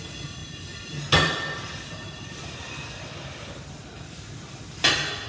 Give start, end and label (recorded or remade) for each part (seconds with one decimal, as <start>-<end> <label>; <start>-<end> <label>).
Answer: 0.0-5.3 recorded